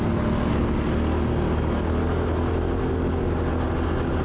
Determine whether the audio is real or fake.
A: real